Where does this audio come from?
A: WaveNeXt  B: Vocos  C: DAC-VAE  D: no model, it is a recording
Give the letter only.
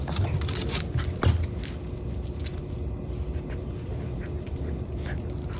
D